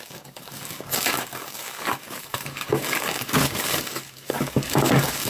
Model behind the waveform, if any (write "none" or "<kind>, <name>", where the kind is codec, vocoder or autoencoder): codec, DAC